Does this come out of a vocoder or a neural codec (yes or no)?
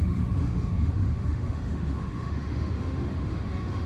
yes